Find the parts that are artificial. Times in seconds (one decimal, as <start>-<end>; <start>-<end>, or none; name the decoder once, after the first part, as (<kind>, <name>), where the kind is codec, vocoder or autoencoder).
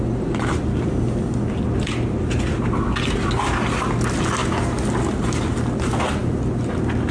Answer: none